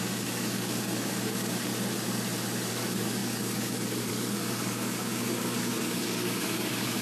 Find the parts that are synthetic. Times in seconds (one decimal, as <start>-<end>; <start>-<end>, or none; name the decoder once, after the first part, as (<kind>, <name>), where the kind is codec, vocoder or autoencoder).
0.0-1.7 (codec, DAC); 2.7-7.0